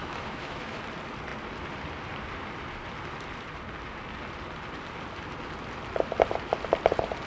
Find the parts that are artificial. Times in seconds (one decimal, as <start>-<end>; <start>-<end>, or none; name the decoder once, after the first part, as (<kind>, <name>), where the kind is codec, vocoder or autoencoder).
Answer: 0.0-0.8 (autoencoder, DAC-VAE)